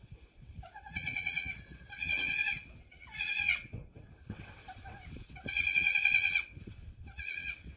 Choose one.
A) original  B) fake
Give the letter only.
B